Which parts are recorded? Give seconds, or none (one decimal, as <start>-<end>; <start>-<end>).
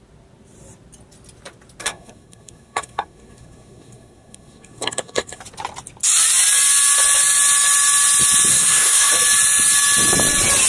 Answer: 0.0-1.8; 5.4-8.5; 9.1-10.7